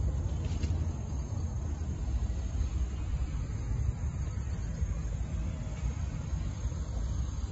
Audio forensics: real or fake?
real